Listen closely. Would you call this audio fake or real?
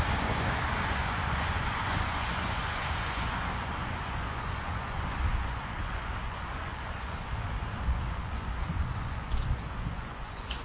fake